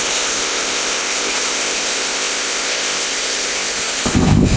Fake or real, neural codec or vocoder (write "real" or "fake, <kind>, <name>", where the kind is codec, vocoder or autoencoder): fake, codec, ZipCodec